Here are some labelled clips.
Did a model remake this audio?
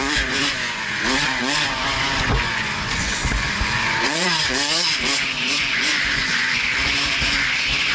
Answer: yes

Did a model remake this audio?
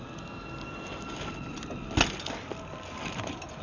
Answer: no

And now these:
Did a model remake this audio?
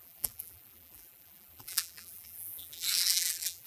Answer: yes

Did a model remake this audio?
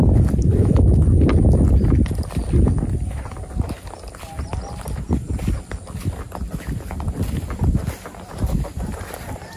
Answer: no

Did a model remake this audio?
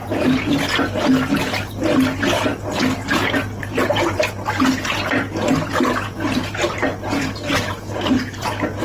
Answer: no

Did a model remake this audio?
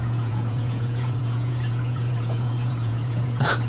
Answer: yes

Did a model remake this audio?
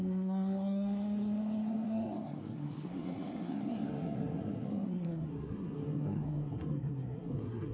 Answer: yes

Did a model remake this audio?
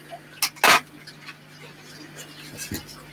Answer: no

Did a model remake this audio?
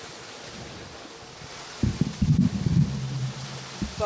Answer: no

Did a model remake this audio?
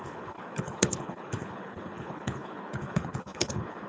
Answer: yes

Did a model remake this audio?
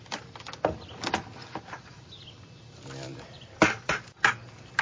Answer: yes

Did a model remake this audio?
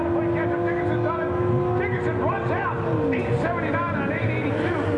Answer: no